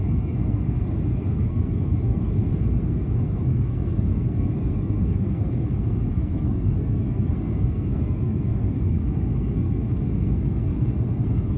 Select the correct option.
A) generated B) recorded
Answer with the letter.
A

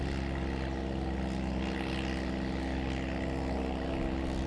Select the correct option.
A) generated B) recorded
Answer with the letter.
B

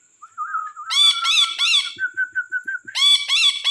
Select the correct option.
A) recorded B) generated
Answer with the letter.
A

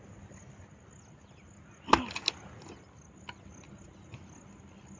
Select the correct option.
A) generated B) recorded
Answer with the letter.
B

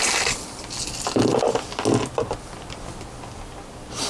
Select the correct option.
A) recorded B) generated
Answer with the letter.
A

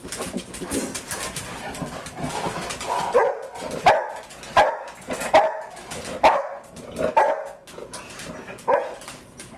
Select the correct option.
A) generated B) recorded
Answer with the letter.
B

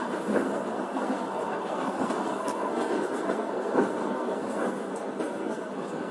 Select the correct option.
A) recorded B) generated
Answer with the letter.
B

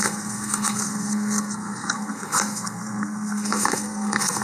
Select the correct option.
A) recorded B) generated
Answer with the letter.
B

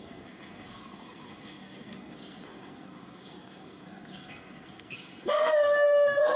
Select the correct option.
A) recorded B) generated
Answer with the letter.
B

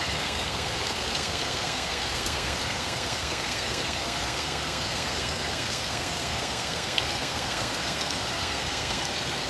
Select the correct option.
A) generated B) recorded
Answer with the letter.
A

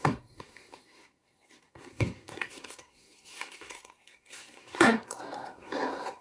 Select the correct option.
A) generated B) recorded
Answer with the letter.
A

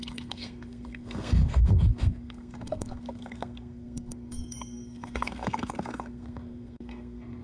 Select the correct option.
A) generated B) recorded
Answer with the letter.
A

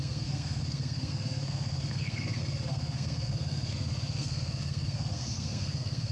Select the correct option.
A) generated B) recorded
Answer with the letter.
A